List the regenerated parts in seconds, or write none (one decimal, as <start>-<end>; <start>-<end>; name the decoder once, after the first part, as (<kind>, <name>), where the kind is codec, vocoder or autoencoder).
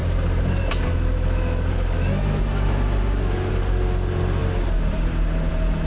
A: none